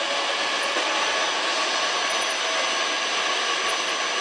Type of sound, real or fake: real